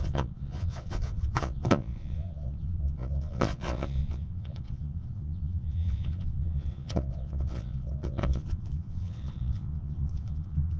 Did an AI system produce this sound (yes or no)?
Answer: yes